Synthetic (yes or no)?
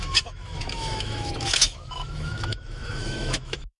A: yes